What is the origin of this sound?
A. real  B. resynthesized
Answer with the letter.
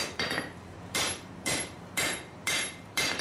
B